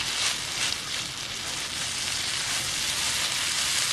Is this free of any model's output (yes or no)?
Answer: yes